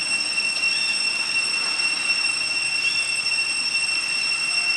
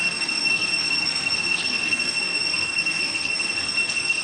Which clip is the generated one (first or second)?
second